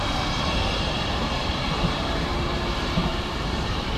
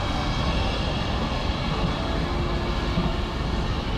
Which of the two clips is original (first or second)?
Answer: second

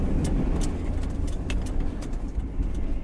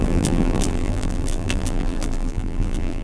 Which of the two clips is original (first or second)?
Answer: first